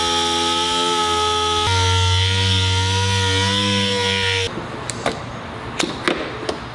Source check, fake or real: real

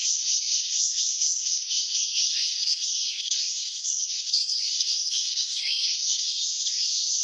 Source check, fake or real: fake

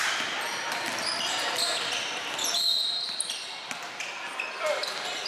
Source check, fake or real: real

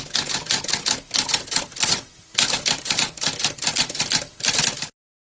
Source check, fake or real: real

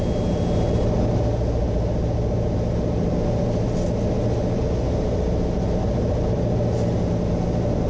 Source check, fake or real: real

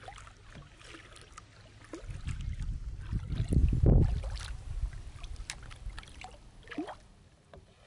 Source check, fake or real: real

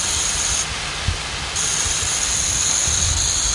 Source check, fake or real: real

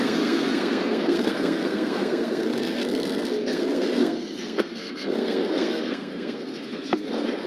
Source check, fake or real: fake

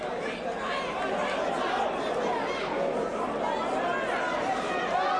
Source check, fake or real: real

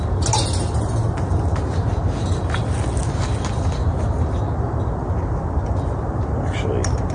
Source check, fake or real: real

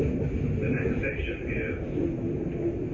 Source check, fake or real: real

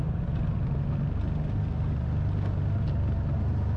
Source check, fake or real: real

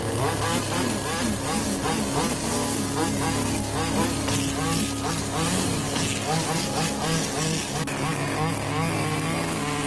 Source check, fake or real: real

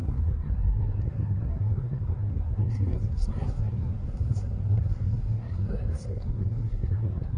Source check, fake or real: fake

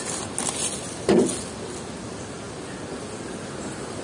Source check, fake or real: real